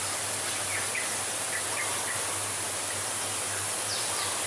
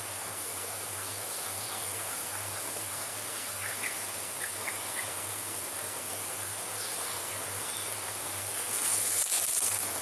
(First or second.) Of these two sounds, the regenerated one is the second